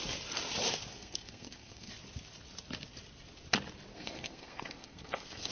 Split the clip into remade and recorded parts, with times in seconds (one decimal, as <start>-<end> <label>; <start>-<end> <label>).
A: 0.0-0.9 recorded; 0.9-1.9 remade; 1.9-3.9 recorded; 3.9-5.5 remade